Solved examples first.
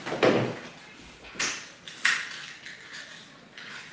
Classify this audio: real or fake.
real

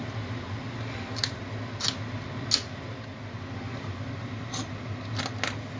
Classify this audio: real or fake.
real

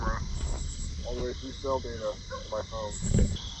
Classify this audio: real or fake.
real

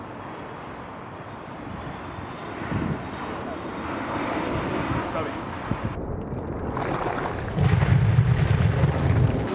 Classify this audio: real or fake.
real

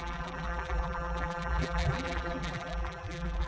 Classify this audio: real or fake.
fake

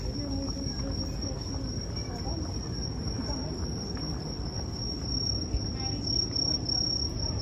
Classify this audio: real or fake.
real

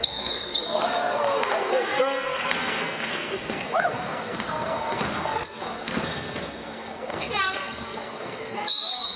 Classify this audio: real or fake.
fake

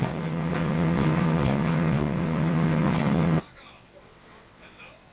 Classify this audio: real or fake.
fake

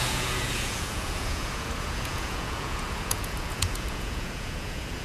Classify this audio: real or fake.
fake